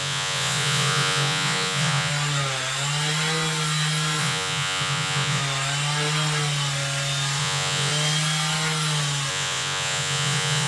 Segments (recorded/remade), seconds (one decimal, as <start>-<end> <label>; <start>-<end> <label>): 0.0-2.1 remade; 2.1-4.2 recorded; 4.2-5.4 remade; 5.4-7.4 recorded; 7.4-7.9 remade; 7.9-9.3 recorded; 9.3-10.7 remade